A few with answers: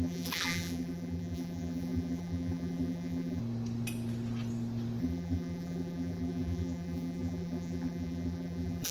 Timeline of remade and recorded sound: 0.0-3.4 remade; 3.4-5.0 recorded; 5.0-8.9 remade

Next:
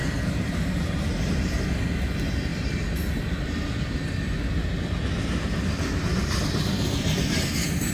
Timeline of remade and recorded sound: 0.0-1.7 remade; 1.7-7.9 recorded

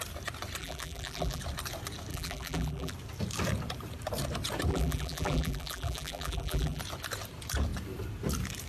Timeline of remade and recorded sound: 0.0-0.6 recorded; 0.6-1.4 remade; 1.4-2.1 recorded; 2.1-2.9 remade; 2.9-4.7 recorded; 4.7-6.8 remade; 6.8-8.7 recorded

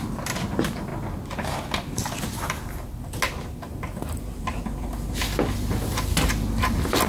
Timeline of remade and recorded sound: 0.0-7.1 recorded

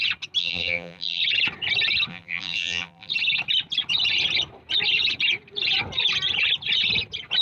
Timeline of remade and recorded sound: 0.0-0.4 recorded; 0.4-1.2 remade; 1.2-2.1 recorded; 2.1-3.1 remade; 3.1-7.4 recorded

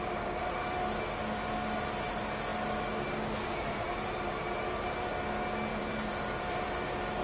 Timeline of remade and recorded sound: 0.0-5.7 recorded; 5.7-6.7 remade; 6.7-7.2 recorded

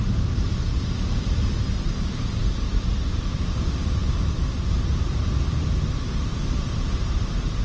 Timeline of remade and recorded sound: 0.0-4.0 remade; 4.0-4.7 recorded; 4.7-7.6 remade

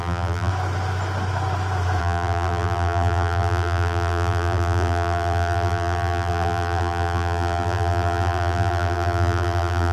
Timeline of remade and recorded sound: 0.0-0.5 remade; 0.5-2.0 recorded; 2.0-9.9 remade